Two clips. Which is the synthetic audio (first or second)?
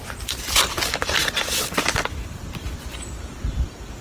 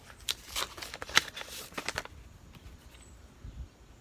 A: first